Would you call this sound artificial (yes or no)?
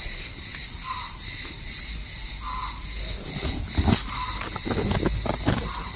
no